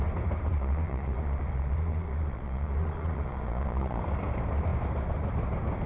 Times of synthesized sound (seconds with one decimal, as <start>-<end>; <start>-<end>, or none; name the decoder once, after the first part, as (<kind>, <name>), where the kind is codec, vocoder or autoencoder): 0.5-4.0 (vocoder, Vocos)